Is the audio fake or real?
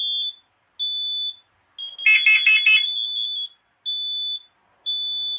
real